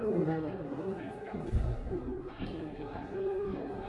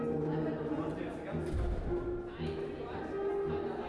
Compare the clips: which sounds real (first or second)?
second